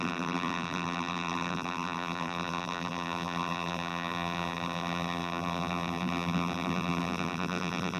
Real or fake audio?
fake